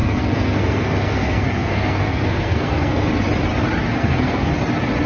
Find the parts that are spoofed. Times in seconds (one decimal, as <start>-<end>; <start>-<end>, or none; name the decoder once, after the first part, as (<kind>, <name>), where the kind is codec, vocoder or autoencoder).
0.0-3.1 (codec, SNAC); 3.9-4.5

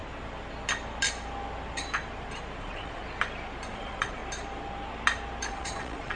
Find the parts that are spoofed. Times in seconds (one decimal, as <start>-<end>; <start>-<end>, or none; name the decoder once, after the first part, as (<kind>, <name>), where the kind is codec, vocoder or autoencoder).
2.6-3.0 (vocoder, Vocos); 3.7-4.2; 5.5-6.2